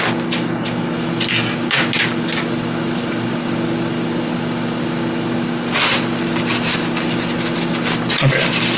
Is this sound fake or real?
real